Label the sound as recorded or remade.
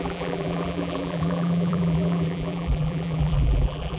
remade